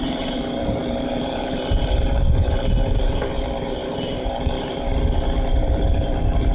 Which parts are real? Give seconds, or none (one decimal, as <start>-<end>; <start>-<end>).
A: none